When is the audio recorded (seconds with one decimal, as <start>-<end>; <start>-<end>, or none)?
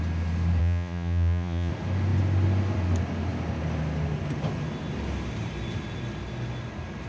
0.0-0.6; 1.7-7.1